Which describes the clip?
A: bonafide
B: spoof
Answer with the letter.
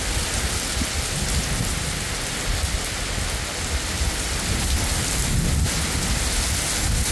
A